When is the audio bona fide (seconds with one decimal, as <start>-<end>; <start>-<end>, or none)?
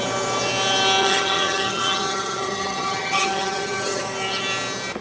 0.0-1.0; 4.0-5.0